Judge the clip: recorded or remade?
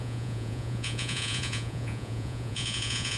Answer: remade